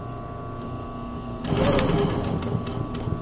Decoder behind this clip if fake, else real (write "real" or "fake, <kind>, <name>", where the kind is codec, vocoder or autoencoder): real